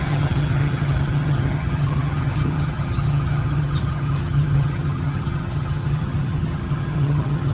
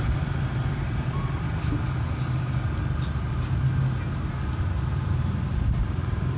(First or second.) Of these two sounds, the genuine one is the second